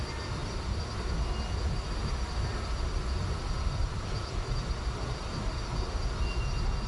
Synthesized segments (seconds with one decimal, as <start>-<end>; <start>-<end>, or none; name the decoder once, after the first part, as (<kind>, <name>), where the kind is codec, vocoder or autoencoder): 3.8-5.5 (vocoder, BigVGAN v2)